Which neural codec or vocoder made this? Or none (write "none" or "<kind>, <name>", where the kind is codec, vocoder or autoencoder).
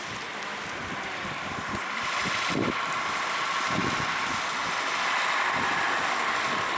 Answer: none